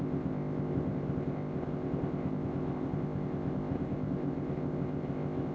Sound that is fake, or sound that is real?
fake